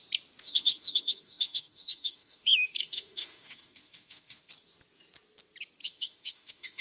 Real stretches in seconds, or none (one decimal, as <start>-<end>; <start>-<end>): 0.0-0.4; 4.5-5.8